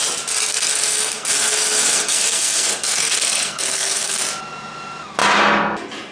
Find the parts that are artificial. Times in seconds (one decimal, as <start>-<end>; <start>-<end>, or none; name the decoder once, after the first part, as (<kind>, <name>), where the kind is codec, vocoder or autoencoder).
0.5-4.2 (codec, SNAC)